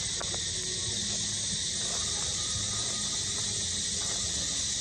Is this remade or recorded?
recorded